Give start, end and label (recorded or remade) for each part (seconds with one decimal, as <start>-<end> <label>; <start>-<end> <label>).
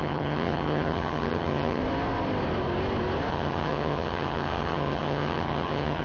0.0-1.8 remade; 1.8-3.3 recorded; 3.3-6.0 remade